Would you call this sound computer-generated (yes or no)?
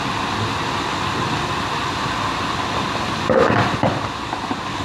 no